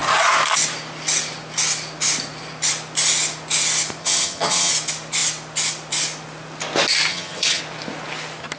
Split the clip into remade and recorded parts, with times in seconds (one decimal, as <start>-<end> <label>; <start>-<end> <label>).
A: 0.0-4.0 recorded; 4.0-4.7 remade; 4.7-7.1 recorded; 7.1-7.6 remade; 7.6-8.6 recorded